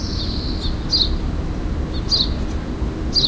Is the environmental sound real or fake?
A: real